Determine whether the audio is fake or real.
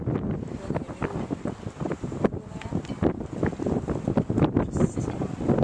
real